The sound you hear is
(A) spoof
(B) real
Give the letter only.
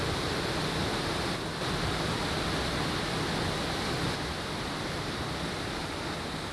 B